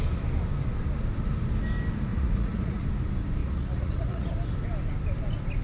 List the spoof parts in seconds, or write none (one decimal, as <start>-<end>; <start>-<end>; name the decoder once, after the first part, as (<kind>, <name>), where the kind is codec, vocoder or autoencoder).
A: 2.1-2.8 (vocoder, Vocos); 3.4-4.3